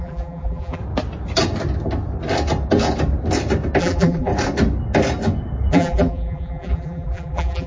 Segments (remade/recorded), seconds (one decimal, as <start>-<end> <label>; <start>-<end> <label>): 0.0-0.8 remade; 0.8-3.8 recorded; 3.8-4.3 remade; 4.3-5.7 recorded; 5.7-7.7 remade